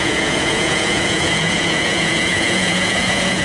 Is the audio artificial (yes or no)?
yes